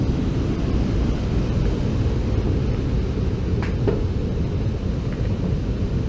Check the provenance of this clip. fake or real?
real